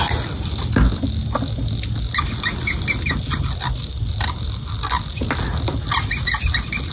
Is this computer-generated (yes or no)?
no